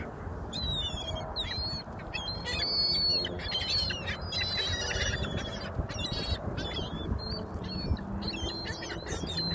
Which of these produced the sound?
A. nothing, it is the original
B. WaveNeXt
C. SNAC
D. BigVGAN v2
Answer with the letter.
A